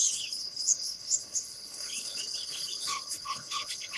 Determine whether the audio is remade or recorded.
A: remade